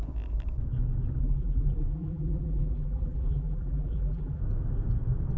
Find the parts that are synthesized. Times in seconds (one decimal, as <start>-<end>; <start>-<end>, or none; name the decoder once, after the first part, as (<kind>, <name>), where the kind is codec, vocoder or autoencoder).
1.2-4.4 (vocoder, BigVGAN v2)